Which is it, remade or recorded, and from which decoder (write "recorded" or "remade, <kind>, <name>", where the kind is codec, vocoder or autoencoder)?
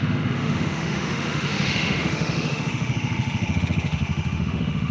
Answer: remade, autoencoder, DAC-VAE